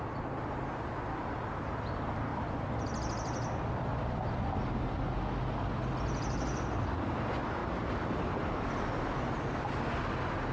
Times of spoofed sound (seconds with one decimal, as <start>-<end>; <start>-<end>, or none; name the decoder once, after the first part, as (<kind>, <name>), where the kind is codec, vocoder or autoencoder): 2.3-3.8 (vocoder, BigVGAN v2); 7.6-8.6